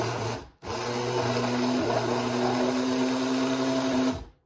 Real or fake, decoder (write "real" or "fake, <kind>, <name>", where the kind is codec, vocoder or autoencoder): real